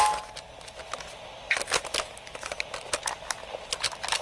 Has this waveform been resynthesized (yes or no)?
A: no